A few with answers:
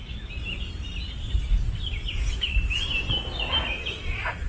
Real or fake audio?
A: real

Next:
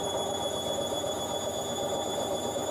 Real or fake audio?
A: real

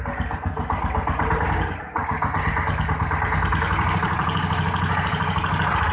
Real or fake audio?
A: real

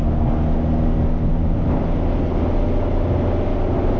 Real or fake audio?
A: real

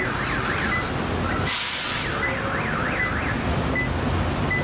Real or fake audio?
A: real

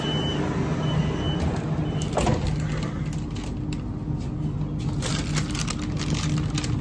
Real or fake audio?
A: real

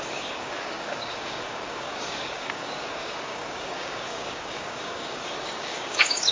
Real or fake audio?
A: fake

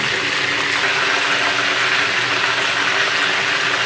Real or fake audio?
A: real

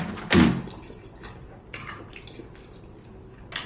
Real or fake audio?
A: real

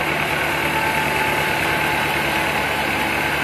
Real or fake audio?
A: real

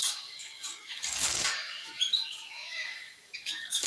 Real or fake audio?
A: fake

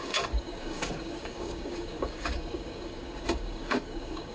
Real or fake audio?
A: fake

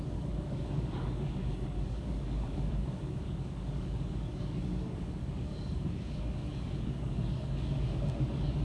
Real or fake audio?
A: fake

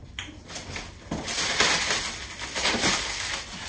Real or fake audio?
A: real